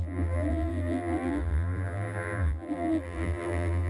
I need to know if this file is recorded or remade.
remade